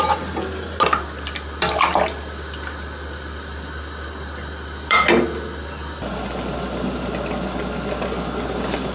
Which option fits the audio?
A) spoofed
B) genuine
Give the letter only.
B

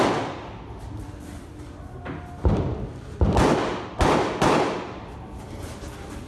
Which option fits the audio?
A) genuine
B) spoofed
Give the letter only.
A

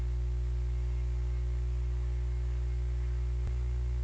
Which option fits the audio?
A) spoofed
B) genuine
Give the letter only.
B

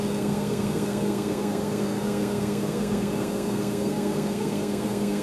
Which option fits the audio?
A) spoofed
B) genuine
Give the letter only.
A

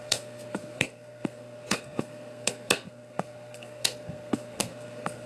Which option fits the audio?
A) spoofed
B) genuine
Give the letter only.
A